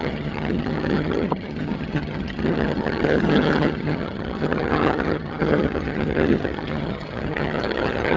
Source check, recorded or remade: remade